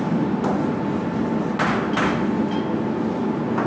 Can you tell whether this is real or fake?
real